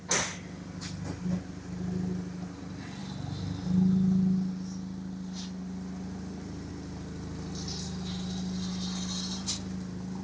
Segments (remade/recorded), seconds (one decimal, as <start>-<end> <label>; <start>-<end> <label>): 0.0-10.2 recorded